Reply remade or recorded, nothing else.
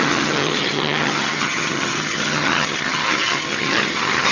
remade